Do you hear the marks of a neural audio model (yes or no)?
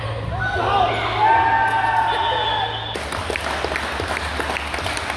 no